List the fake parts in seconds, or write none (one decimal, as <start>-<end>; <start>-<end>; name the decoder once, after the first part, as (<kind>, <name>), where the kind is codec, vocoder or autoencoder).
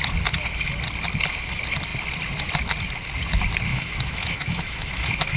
3.7-5.4 (autoencoder, DAC-VAE)